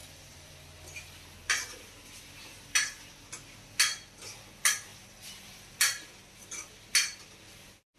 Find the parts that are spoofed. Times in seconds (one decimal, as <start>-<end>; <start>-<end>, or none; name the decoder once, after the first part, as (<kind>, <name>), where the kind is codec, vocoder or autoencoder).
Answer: 0.0-0.5 (vocoder, BigVGAN v2); 4.9-5.7